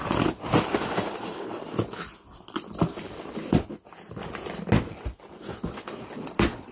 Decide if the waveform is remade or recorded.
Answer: recorded